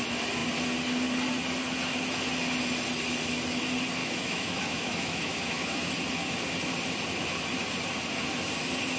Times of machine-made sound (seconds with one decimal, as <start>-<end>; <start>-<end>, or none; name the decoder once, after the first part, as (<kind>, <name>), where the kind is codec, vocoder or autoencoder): 4.0-5.9 (autoencoder, DAC-VAE)